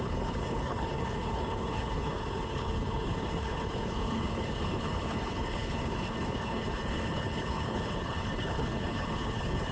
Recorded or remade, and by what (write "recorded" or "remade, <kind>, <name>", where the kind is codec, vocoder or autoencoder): remade, codec, HILCodec